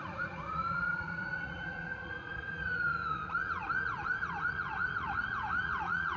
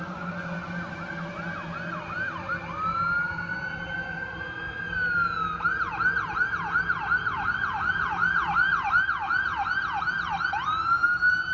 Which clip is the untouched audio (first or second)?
second